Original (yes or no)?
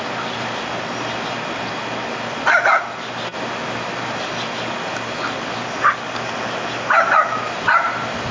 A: yes